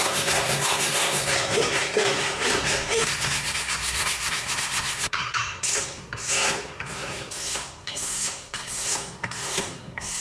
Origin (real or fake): fake